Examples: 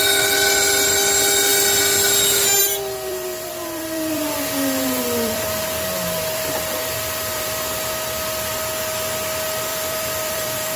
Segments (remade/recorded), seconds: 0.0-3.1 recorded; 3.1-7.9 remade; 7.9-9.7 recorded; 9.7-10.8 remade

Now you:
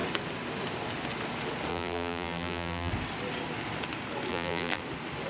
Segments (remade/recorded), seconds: 0.0-1.7 recorded; 1.7-2.9 remade; 2.9-4.3 recorded; 4.3-4.8 remade; 4.8-5.3 recorded

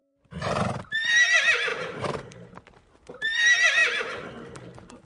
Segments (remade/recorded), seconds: 0.0-0.8 remade; 0.8-1.7 recorded; 1.7-2.5 remade; 2.5-5.1 recorded

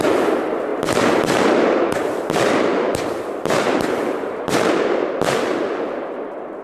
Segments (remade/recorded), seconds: 0.0-0.7 recorded; 0.7-4.7 remade; 4.7-6.6 recorded

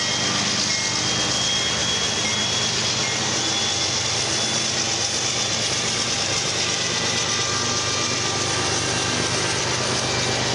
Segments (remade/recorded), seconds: 0.0-5.0 recorded; 5.0-7.3 remade; 7.3-10.5 recorded

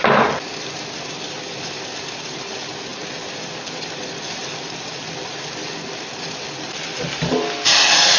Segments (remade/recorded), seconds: 0.0-2.9 remade; 2.9-7.1 recorded; 7.1-8.2 remade

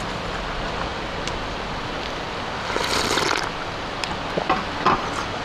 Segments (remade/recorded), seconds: 0.0-5.4 recorded